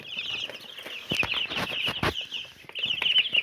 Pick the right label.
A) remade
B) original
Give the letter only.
B